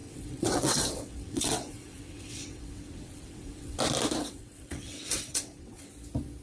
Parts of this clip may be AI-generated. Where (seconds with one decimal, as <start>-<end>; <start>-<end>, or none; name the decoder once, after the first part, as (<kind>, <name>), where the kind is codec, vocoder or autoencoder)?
0.0-3.8 (vocoder, WaveNeXt); 4.2-5.9